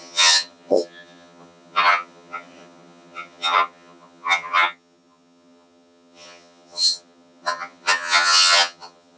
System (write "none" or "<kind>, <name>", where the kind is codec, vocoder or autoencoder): vocoder, HiFi-GAN